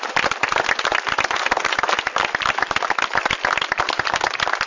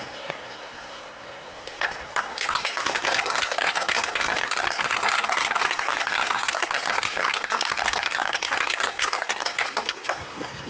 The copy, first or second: second